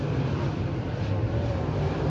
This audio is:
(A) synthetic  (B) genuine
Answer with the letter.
A